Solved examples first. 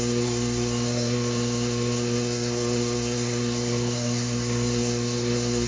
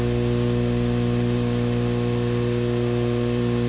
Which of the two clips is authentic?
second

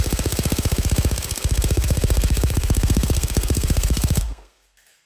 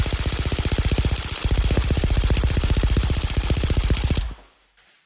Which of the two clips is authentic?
second